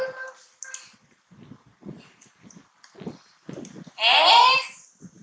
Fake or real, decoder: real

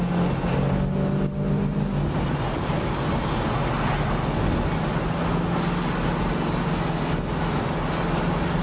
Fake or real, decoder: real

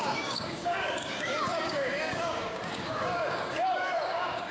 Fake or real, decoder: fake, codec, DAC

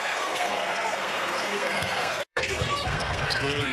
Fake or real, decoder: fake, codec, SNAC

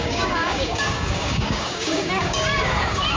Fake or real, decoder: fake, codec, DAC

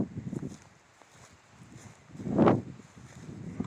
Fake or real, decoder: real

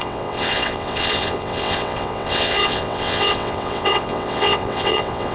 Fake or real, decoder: fake, vocoder, WaveNeXt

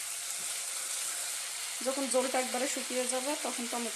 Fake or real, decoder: real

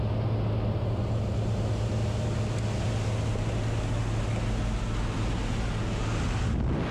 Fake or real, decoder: real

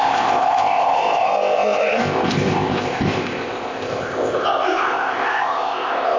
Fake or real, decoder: fake, codec, ZipCodec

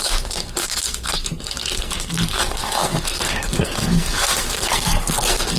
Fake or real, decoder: fake, codec, SNAC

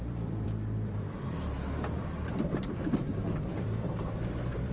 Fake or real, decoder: fake, vocoder, BigVGAN v2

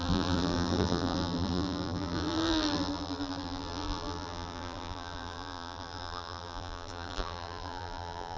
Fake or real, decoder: fake, vocoder, BigVGAN v2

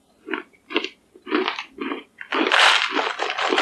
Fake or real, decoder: real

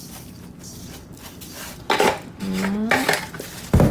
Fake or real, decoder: real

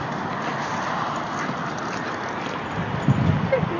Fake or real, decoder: real